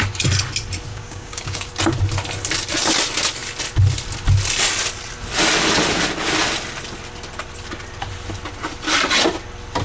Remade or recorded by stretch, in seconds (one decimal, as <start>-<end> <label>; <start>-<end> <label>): 0.0-0.9 recorded; 0.9-1.7 remade; 1.7-9.8 recorded